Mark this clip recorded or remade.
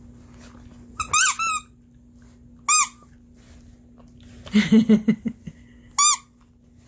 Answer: recorded